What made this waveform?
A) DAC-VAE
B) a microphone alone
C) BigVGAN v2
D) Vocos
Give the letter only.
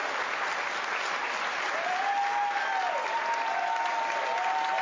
B